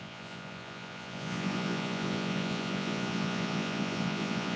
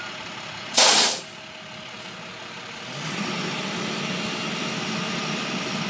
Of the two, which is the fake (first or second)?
first